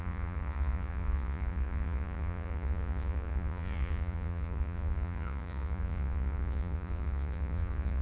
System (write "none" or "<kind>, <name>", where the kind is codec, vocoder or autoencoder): vocoder, Vocos